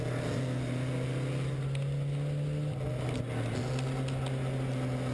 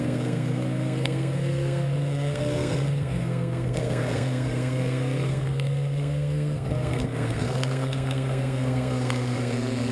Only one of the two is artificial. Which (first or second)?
second